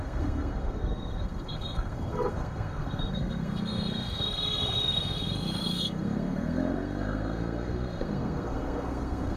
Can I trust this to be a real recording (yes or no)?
no